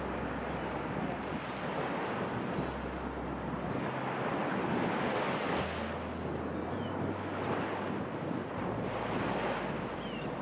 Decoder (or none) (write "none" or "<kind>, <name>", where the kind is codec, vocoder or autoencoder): none